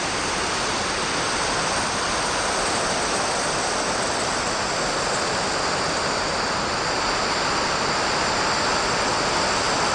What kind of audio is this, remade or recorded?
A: recorded